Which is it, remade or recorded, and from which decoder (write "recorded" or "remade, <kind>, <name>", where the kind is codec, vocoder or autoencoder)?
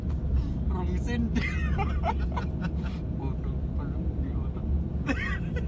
recorded